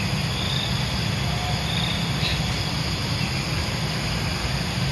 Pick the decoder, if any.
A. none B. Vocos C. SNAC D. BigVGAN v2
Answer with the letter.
A